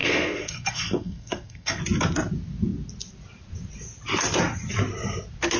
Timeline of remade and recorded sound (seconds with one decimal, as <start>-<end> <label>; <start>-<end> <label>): 0.0-1.8 remade; 1.8-5.6 recorded